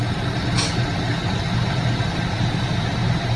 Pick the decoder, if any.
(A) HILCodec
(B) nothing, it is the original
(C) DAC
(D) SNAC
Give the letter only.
B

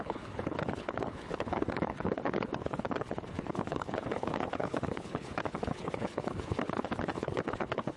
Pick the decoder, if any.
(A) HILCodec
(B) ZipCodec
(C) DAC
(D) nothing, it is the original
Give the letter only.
A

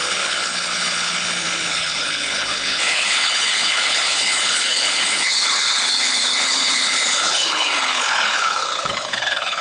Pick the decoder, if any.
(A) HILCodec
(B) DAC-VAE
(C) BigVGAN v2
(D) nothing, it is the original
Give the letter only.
A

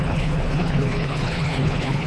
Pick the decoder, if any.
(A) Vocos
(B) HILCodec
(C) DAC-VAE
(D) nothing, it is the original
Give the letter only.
B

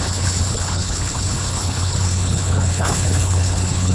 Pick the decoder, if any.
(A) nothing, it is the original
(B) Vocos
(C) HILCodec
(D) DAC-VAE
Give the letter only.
C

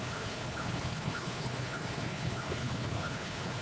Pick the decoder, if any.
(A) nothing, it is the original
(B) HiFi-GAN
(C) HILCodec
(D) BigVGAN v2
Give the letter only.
C